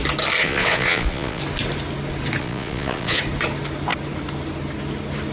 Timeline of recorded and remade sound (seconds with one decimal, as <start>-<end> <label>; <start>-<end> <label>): 0.0-0.4 recorded; 0.4-1.4 remade; 1.4-2.4 recorded; 2.4-3.2 remade; 3.2-5.3 recorded